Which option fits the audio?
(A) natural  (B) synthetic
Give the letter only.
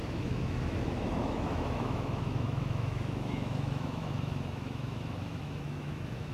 B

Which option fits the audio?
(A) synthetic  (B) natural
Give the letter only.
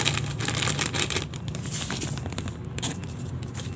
A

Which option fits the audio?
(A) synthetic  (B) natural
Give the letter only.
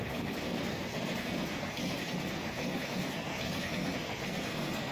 A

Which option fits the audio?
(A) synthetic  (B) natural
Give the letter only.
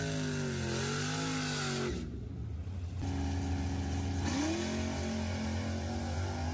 B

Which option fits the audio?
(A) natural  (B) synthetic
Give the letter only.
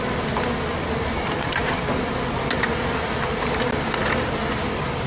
A